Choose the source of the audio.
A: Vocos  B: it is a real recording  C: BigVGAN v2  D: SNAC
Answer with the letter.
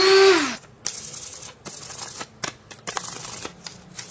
B